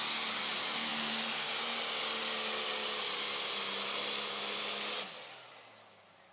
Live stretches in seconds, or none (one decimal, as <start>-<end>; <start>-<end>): 0.0-6.3